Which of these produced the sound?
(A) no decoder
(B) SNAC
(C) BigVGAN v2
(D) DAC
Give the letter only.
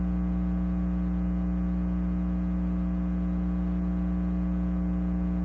A